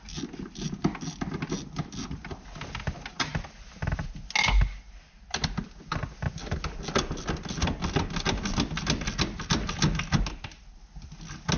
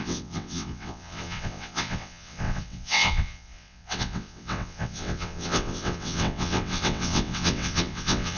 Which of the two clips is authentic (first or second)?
first